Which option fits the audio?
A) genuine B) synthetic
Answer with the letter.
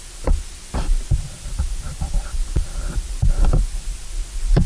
A